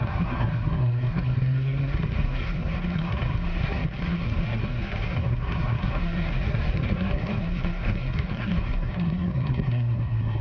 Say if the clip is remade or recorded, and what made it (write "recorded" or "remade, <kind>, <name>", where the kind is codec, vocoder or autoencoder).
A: remade, codec, SNAC